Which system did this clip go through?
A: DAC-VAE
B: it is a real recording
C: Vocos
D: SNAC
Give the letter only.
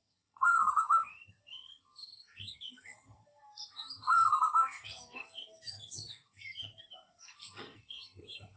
D